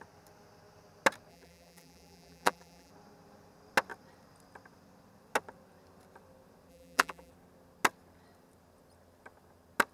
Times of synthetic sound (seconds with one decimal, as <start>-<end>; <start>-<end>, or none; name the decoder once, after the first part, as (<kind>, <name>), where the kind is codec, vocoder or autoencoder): 1.3-2.9 (vocoder, BigVGAN v2); 6.7-7.3